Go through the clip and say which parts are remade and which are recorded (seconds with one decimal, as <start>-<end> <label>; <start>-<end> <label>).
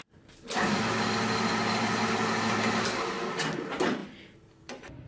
0.0-4.0 recorded; 4.0-5.1 remade